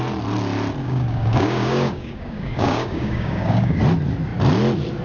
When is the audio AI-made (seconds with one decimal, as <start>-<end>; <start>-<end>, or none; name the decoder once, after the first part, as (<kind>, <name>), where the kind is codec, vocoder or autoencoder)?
0.8-3.8 (codec, DAC)